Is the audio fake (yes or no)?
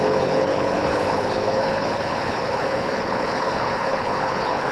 yes